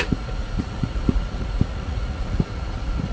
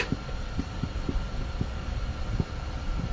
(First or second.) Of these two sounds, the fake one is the first